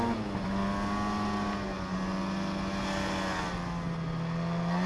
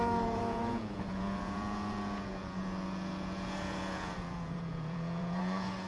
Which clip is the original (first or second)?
first